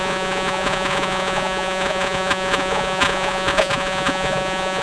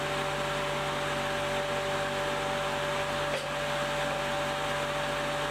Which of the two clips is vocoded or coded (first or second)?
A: first